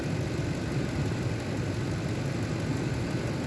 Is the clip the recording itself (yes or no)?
yes